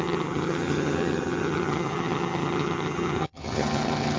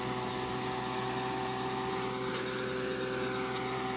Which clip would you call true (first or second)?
second